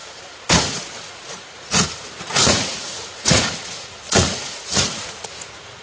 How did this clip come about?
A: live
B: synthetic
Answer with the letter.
B